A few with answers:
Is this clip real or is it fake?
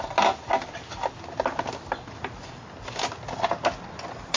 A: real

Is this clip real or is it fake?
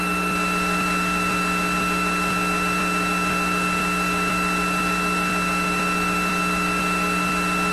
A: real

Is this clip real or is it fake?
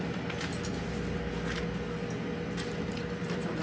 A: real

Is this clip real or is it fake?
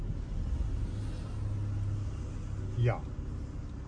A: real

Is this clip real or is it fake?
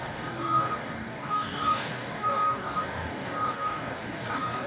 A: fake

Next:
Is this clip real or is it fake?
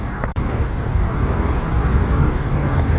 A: fake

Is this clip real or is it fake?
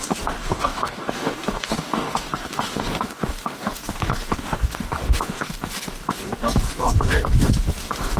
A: fake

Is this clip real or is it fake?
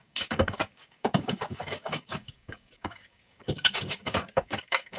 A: fake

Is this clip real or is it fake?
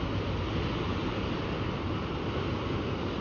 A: real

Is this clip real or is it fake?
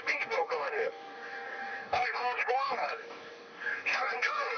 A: fake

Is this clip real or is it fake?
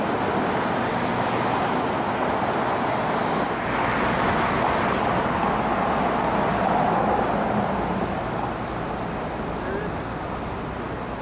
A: real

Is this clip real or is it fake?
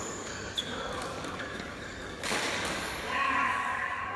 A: fake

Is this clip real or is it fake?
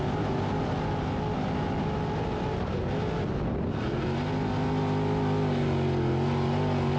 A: real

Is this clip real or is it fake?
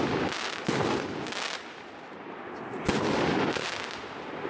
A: real